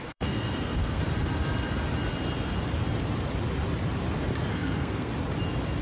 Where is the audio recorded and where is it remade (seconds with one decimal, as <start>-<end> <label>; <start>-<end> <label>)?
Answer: 0.0-1.0 remade; 1.0-4.5 recorded; 4.5-5.1 remade; 5.1-5.8 recorded